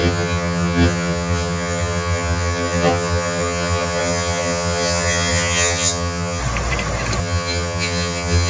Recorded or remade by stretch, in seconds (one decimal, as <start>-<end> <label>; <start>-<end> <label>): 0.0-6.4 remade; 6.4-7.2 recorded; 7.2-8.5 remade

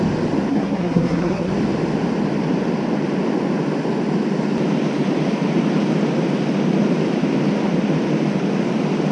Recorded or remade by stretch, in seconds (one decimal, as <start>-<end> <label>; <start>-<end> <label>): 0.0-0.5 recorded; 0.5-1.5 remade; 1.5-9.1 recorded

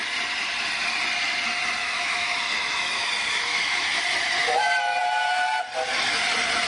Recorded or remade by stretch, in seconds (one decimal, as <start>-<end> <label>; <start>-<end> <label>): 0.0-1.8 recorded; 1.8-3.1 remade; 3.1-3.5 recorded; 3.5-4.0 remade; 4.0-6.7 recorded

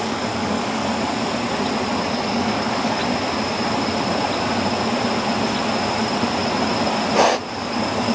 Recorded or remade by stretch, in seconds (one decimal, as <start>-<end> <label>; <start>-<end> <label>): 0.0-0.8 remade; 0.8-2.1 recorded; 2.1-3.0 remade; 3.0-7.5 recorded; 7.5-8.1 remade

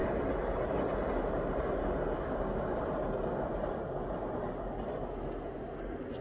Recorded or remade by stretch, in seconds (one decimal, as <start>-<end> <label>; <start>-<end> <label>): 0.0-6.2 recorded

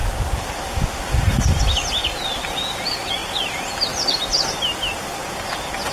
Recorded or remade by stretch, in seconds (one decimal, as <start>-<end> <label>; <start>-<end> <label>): 0.0-5.9 recorded